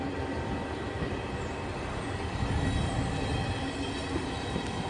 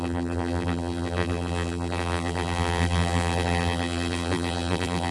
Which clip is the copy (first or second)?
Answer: second